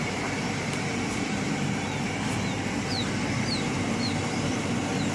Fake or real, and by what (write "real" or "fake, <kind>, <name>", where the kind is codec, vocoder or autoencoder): fake, vocoder, BigVGAN v2